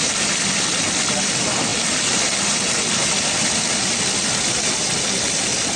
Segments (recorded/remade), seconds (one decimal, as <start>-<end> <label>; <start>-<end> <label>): 0.0-5.8 recorded